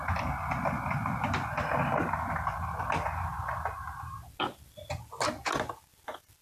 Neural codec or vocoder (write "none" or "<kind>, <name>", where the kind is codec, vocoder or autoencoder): none